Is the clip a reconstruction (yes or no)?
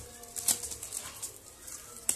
no